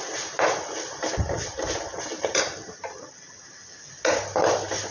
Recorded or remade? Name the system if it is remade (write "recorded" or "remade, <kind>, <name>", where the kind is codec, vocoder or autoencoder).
recorded